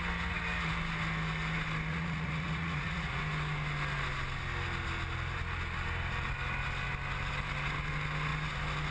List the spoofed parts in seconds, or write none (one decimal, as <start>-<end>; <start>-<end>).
1.9-3.2